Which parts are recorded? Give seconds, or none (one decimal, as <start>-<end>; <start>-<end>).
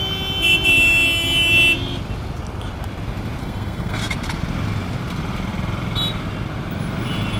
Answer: 0.0-3.4; 4.0-7.4